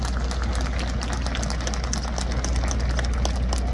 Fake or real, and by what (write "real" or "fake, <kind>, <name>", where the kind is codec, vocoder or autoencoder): real